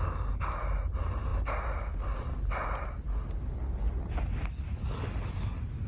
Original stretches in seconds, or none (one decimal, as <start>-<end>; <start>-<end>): 0.0-5.9